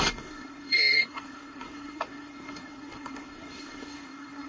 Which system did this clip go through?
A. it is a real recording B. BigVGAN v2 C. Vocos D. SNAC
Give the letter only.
D